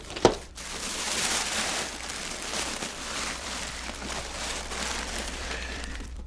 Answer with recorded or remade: remade